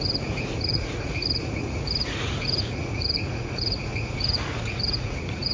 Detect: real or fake fake